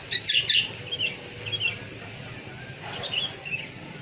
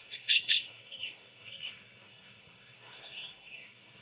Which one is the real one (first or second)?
first